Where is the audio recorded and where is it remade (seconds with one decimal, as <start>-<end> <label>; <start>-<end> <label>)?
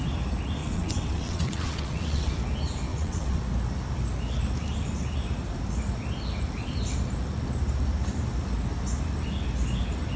0.0-0.6 recorded; 0.6-2.4 remade; 2.4-2.9 recorded; 2.9-3.4 remade; 3.4-10.2 recorded